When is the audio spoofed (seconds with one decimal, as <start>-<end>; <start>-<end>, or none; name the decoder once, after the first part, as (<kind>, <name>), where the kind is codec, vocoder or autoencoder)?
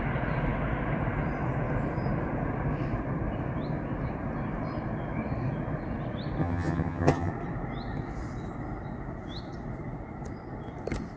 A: 6.4-7.3 (vocoder, HiFi-GAN)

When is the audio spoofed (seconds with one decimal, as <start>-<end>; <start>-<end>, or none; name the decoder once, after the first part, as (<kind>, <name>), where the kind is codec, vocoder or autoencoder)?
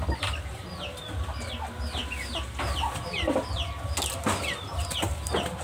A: none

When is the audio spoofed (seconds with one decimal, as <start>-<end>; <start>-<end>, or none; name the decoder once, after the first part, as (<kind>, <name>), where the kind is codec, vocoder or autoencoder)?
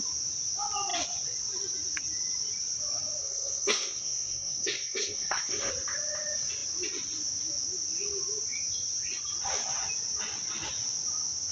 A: 3.2-5.7 (codec, SNAC)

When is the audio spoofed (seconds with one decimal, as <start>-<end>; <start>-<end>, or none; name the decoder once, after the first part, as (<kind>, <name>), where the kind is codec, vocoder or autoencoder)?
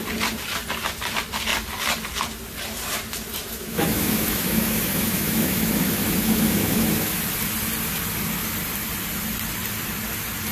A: 3.3-7.2 (autoencoder, DAC-VAE)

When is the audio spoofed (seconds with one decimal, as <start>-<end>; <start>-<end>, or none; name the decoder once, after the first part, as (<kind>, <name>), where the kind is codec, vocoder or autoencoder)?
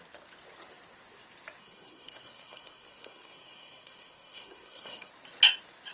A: 1.6-5.1 (codec, SNAC)